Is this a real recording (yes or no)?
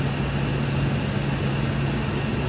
yes